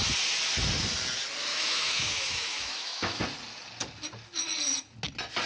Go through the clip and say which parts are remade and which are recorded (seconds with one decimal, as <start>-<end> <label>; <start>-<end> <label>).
0.0-1.5 recorded; 1.5-3.2 remade; 3.2-5.5 recorded